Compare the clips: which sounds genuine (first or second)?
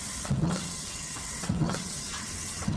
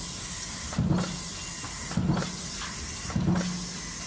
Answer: second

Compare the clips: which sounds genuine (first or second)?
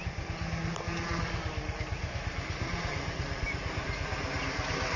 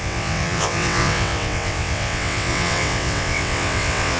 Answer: first